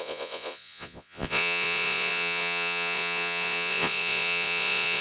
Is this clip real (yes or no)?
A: no